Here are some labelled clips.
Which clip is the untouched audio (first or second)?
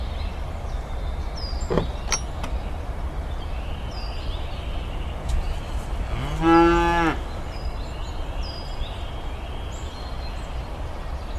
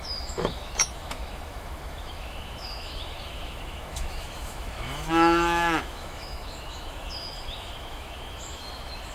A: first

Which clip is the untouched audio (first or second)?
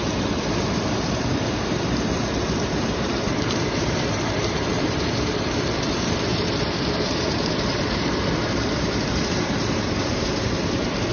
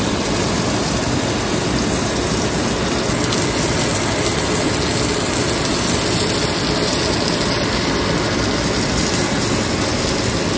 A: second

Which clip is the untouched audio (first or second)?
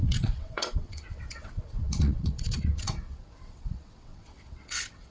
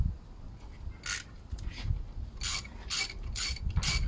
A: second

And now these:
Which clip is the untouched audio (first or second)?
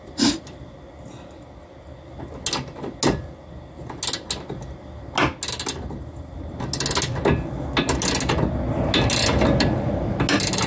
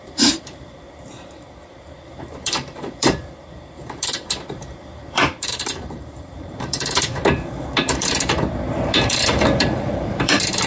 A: first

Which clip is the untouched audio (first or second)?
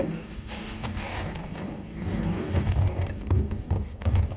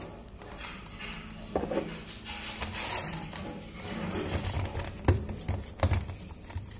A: second